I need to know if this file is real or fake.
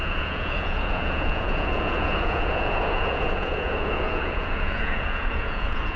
fake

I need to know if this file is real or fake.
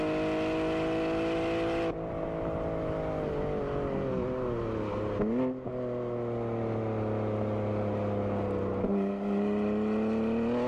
real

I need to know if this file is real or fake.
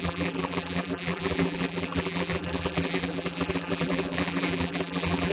fake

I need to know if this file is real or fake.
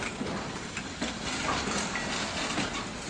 real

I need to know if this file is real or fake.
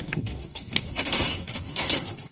fake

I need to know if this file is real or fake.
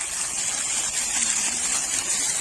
real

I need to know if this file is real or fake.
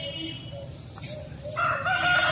real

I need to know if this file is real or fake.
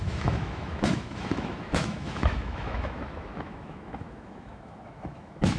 fake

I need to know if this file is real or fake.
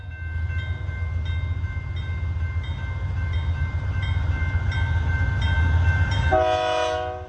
real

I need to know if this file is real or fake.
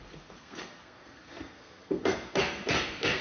fake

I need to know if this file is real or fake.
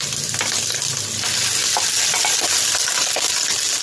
real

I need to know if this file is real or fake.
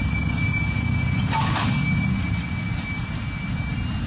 real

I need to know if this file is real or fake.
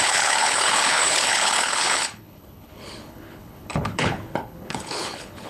fake